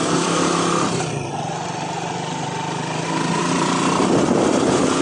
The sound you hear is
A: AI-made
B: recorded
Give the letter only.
B